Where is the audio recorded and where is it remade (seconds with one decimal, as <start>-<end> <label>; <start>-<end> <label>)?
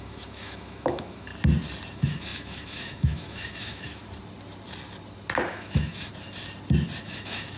0.0-1.3 remade; 1.3-1.9 recorded; 1.9-4.0 remade; 4.0-5.5 recorded; 5.5-6.1 remade; 6.1-7.0 recorded; 7.0-7.6 remade